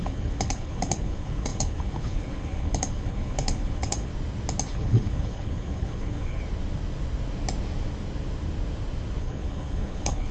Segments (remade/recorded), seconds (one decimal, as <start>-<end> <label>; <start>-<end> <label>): 0.0-4.1 remade; 4.1-4.7 recorded; 4.7-6.4 remade; 6.4-9.2 recorded; 9.2-10.3 remade